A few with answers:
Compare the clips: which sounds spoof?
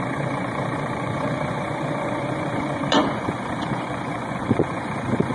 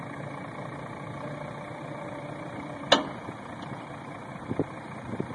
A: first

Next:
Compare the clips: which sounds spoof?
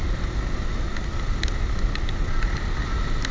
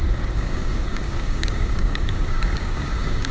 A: second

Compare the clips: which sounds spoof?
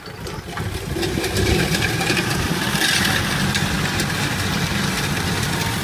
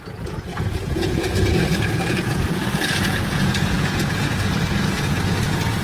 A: second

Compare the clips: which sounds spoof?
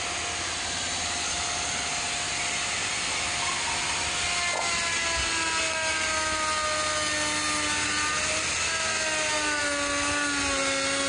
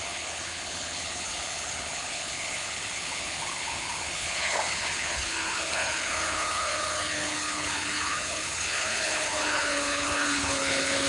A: second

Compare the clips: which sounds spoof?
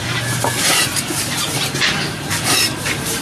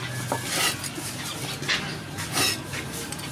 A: first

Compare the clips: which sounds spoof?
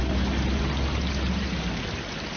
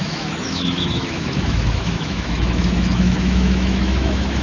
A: second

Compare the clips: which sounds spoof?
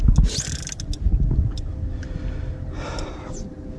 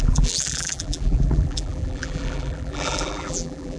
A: second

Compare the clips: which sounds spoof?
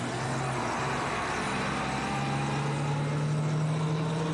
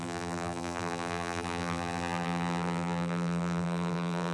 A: second